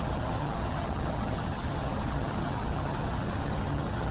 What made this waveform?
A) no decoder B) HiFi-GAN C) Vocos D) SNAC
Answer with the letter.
B